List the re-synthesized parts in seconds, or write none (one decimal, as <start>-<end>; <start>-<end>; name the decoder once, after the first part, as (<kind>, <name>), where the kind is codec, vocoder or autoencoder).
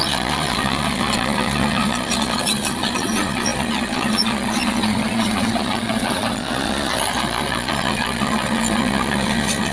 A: 0.0-9.7 (vocoder, Vocos)